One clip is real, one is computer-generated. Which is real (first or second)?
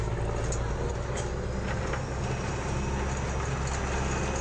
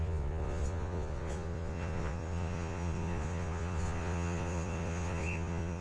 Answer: first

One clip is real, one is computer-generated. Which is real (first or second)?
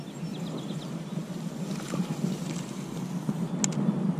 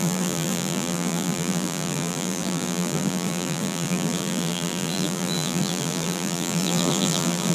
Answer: first